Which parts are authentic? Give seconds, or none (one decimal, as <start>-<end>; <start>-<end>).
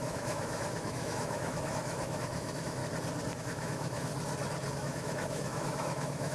2.8-3.4; 4.1-4.7